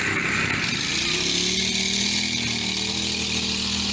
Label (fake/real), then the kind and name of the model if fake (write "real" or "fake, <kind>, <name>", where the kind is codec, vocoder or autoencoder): real